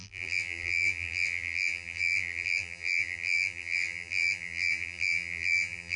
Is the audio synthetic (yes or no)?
yes